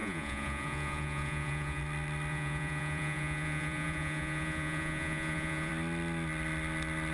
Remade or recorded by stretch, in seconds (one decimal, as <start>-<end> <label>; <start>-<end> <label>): 0.0-1.8 remade; 1.8-2.3 recorded; 2.3-5.7 remade; 5.7-7.1 recorded